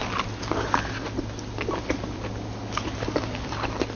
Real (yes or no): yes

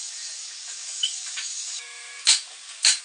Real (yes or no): no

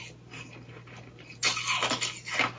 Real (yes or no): yes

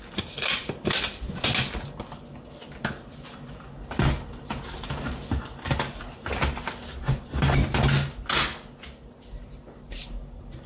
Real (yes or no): yes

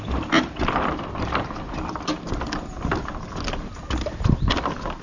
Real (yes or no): yes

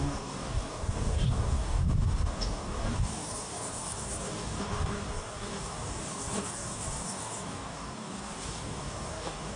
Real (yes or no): no